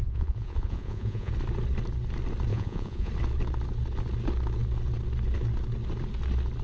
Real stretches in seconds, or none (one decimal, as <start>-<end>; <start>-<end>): 1.3-2.5; 3.1-6.6